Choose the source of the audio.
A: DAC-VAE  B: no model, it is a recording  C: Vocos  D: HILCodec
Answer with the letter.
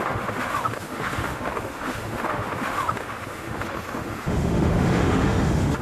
A